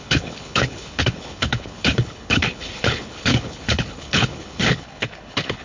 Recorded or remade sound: remade